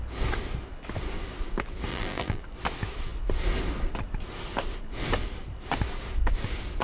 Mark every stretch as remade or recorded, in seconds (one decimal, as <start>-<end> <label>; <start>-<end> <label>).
0.0-1.9 recorded; 1.9-2.4 remade; 2.4-6.8 recorded